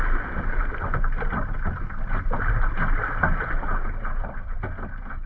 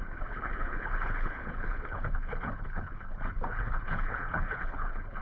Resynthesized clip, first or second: second